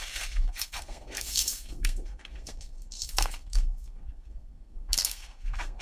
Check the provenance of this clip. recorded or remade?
remade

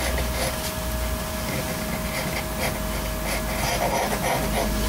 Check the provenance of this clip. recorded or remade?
recorded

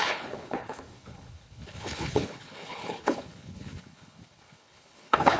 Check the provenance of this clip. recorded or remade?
remade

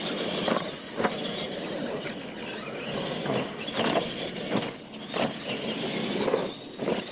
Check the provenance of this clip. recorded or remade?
recorded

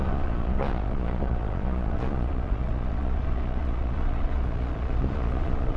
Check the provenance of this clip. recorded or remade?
remade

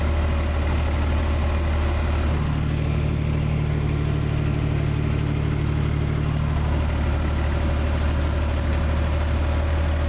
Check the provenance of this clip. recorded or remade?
recorded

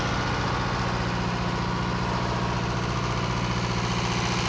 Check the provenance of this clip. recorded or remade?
recorded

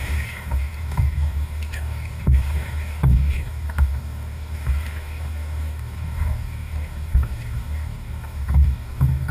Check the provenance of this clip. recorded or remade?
remade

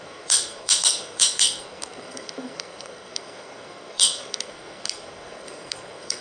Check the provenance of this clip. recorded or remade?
remade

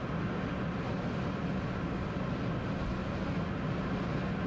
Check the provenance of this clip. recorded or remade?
recorded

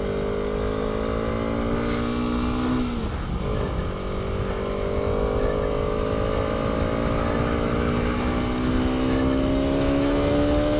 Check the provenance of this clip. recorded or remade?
recorded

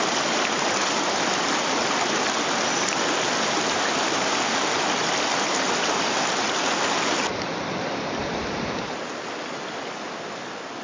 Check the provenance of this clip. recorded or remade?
recorded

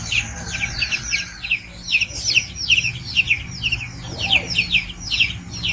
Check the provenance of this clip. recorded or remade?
recorded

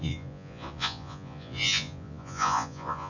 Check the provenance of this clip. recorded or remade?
remade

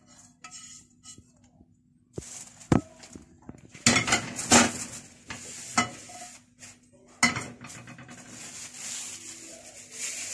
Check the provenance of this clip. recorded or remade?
recorded